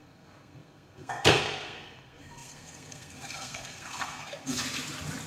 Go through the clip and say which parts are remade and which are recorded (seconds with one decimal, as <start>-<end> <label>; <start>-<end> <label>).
0.0-4.6 remade; 4.6-5.3 recorded